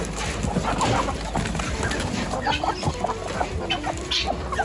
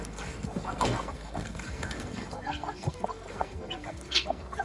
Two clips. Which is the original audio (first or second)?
first